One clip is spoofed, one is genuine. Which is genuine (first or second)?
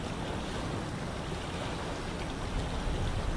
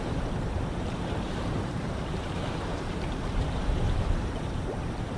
first